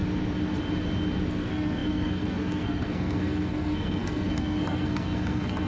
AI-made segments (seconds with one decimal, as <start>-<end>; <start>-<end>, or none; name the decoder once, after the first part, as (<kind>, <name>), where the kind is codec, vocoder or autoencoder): 1.3-5.7 (codec, SNAC)